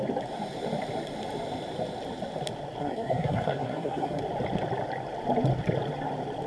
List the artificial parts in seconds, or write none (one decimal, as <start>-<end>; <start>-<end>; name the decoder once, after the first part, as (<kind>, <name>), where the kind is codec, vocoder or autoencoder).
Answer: 2.8-4.2 (codec, SNAC)